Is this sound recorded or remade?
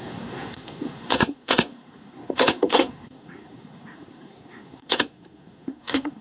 remade